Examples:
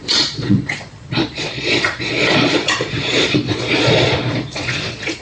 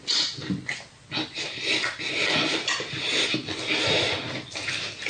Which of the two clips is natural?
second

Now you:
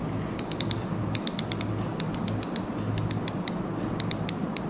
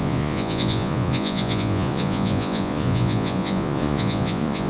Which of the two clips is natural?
first